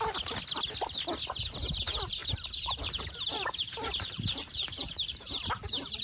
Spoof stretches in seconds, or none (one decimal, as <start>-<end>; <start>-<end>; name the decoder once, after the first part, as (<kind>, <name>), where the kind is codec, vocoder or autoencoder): 2.2-6.0 (vocoder, BigVGAN v2)